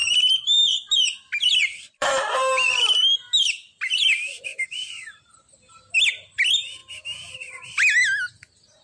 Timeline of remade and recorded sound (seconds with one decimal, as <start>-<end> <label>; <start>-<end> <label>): 0.0-1.2 remade; 1.2-1.6 recorded; 1.6-2.8 remade; 2.8-8.8 recorded